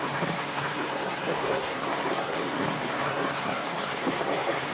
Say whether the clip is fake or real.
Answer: fake